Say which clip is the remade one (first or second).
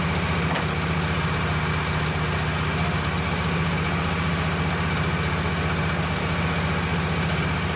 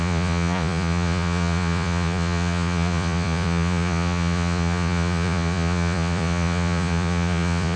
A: second